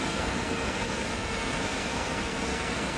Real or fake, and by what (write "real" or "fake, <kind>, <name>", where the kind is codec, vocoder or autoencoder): fake, codec, SNAC